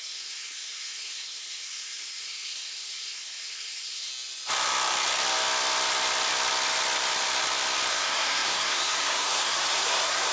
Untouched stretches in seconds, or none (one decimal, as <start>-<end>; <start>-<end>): 4.1-7.9